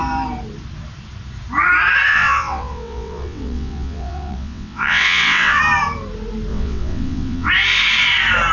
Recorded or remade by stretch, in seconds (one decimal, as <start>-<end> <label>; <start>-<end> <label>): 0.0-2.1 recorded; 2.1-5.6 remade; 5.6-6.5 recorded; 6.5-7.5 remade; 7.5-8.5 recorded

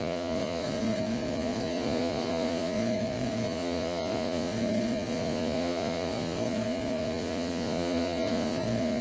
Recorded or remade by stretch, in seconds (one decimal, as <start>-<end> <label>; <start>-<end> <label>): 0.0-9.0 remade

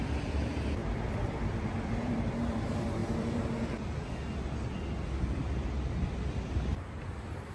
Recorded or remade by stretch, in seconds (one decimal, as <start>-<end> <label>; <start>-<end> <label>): 0.0-3.0 remade; 3.0-6.4 recorded; 6.4-7.5 remade